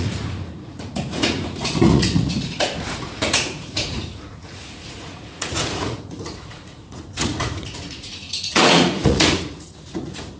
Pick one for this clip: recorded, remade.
remade